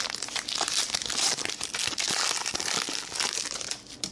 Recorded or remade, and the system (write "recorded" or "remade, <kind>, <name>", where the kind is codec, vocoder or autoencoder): recorded